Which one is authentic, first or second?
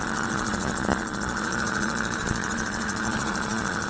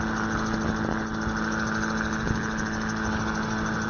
second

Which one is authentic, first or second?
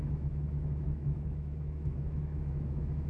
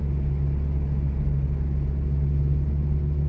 second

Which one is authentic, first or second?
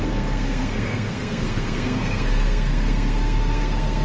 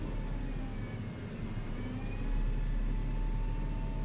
second